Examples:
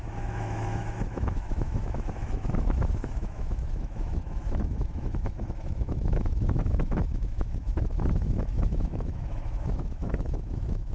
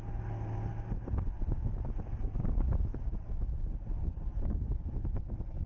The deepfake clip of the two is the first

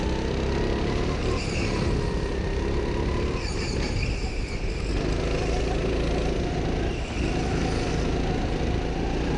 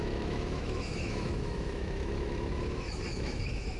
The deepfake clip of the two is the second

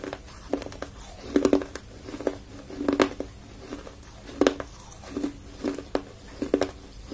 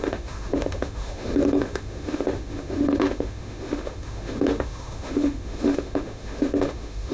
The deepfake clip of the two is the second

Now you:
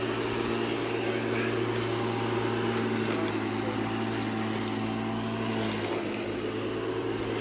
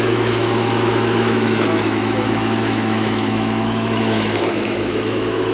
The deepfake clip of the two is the second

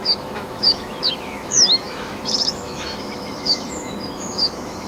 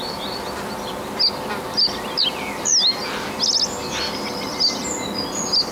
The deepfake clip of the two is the first